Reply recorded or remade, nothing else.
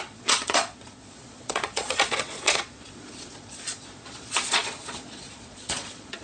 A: remade